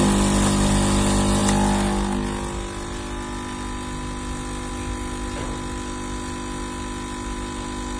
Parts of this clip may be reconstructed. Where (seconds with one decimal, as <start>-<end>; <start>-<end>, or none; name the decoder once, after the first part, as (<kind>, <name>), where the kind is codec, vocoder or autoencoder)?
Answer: none